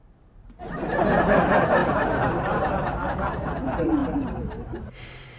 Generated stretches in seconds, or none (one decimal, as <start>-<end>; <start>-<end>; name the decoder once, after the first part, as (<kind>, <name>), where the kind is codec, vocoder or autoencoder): 0.0-4.0 (vocoder, BigVGAN v2); 4.8-5.4